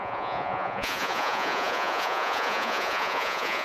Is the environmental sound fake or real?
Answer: fake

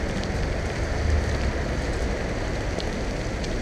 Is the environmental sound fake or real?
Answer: real